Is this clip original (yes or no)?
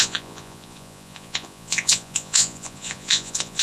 no